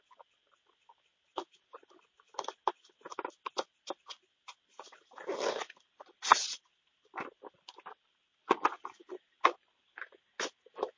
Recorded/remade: recorded